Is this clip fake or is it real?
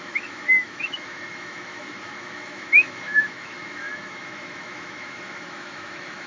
fake